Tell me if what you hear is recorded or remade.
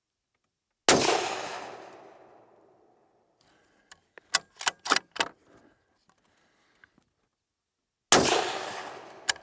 recorded